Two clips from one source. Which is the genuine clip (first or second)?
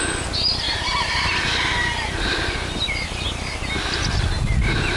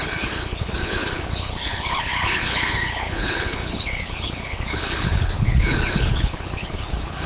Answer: first